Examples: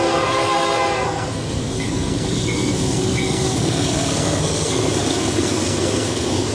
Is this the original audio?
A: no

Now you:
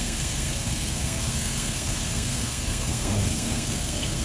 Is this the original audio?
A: no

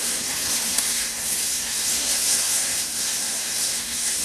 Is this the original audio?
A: no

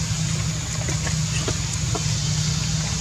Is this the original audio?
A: yes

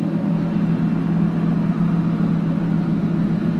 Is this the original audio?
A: yes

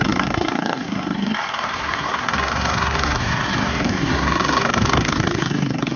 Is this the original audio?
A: no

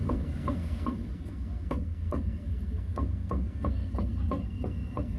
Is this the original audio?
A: no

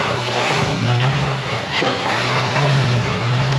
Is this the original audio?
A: no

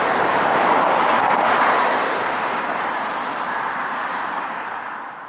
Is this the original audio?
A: yes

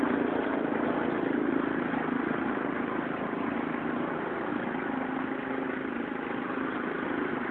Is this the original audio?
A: yes